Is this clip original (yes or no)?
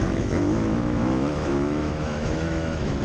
no